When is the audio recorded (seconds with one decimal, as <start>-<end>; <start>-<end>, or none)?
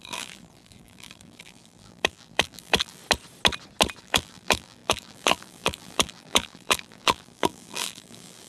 3.0-4.0